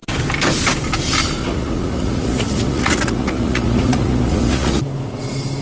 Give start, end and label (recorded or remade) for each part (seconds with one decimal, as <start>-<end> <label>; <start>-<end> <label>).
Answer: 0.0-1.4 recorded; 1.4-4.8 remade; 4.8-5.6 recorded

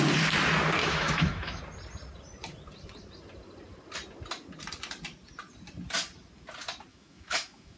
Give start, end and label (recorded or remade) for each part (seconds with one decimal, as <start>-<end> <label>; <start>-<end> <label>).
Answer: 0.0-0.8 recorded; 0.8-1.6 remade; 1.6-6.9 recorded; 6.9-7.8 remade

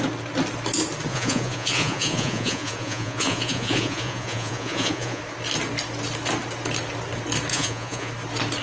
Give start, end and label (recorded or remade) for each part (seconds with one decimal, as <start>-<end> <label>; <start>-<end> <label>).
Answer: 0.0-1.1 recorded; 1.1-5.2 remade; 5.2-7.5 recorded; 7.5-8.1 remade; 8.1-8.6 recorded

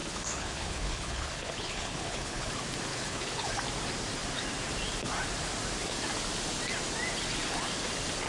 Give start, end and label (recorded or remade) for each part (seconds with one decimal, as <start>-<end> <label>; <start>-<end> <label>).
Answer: 0.0-2.5 remade; 2.5-2.9 recorded; 2.9-3.5 remade; 3.5-8.3 recorded